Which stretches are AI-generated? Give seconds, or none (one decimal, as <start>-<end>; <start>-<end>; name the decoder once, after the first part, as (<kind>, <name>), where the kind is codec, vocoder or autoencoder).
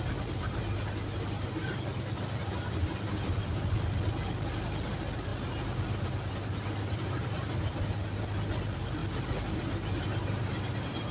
none